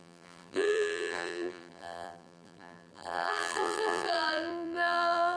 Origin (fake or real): fake